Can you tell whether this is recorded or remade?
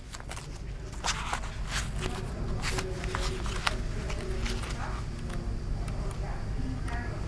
recorded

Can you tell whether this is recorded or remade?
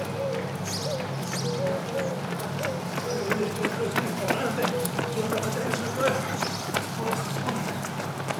recorded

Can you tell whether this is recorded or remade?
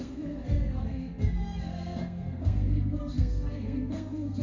remade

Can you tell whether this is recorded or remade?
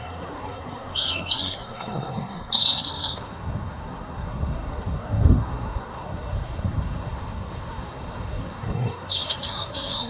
remade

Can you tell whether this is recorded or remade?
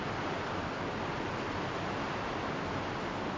recorded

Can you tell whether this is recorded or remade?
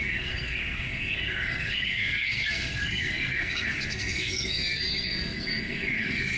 remade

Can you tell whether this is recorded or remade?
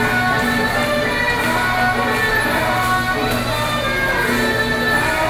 recorded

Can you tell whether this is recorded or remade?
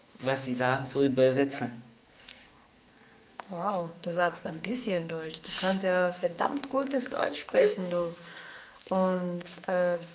remade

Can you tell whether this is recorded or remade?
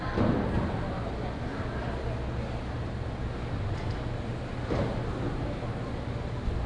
recorded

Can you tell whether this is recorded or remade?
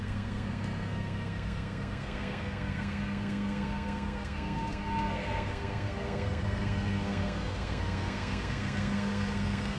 remade